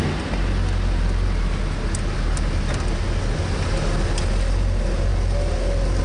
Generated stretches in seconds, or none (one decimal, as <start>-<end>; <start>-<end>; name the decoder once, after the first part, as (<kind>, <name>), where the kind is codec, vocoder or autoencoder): none